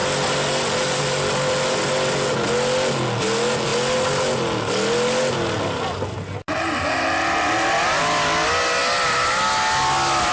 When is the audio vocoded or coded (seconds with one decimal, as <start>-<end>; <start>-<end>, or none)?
none